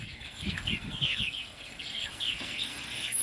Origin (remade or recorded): remade